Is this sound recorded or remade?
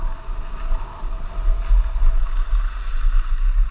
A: recorded